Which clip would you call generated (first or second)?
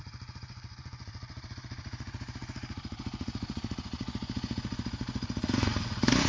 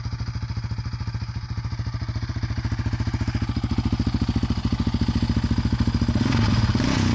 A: first